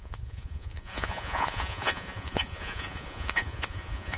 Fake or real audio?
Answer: fake